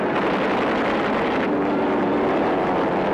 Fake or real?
real